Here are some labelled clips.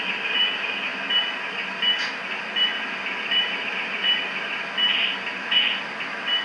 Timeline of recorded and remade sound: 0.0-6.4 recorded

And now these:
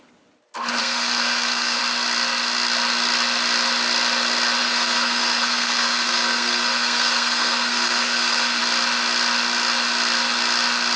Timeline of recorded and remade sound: 0.0-0.8 recorded; 0.8-1.8 remade; 1.8-4.6 recorded; 4.6-8.6 remade; 8.6-11.0 recorded

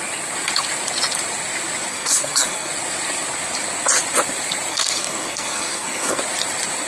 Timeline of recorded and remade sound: 0.0-1.9 recorded; 1.9-2.7 remade; 2.7-4.7 recorded; 4.7-6.2 remade; 6.2-6.9 recorded

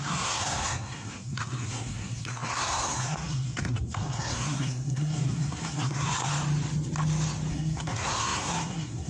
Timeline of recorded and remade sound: 0.0-6.3 remade; 6.3-7.5 recorded; 7.5-9.1 remade

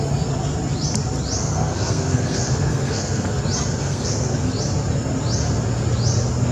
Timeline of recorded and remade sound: 0.0-1.4 recorded; 1.4-3.4 remade; 3.4-3.8 recorded; 3.8-4.5 remade; 4.5-6.5 recorded

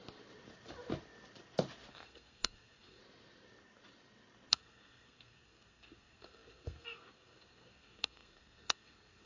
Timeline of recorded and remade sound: 0.0-1.9 recorded; 1.9-3.0 remade; 3.0-4.5 recorded; 4.5-9.3 remade